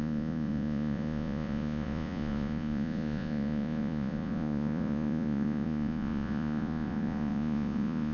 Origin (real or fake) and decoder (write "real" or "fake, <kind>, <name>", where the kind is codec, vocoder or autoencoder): fake, vocoder, Vocos